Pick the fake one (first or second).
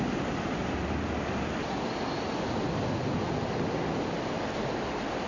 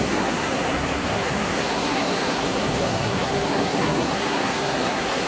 second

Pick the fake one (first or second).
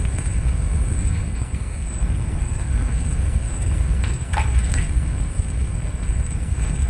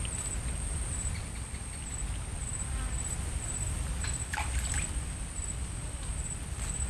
first